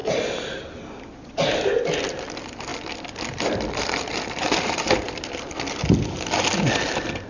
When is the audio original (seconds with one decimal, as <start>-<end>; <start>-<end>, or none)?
1.8-2.7; 5.5-7.3